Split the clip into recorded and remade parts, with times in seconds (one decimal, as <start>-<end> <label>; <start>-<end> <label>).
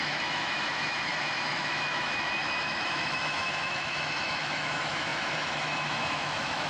0.0-6.7 remade